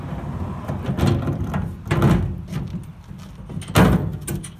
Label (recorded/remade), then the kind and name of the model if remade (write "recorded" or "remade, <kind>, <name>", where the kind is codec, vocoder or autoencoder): recorded